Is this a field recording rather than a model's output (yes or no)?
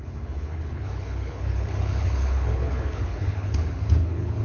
no